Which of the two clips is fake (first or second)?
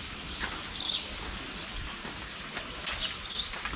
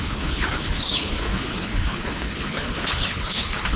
second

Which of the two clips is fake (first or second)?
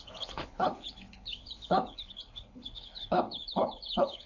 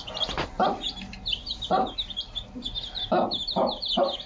first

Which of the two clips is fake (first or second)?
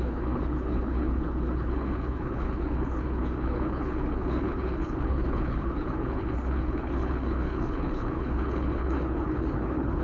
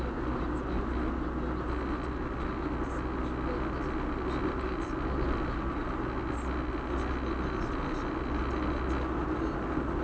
first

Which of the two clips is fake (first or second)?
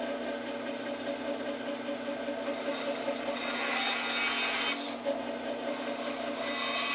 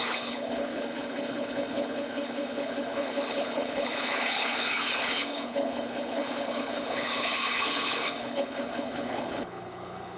second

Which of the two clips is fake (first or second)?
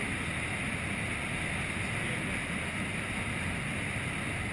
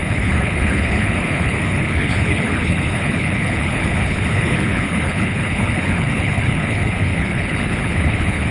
second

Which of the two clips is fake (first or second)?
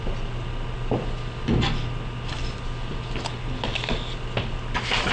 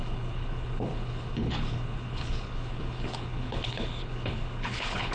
second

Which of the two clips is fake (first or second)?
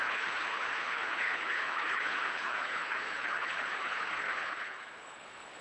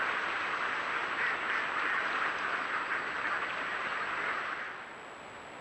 first